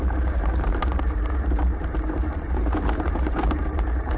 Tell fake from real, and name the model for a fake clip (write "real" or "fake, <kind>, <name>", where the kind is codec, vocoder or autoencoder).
fake, vocoder, BigVGAN v2